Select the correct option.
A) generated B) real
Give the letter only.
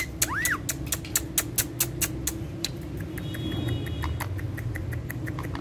B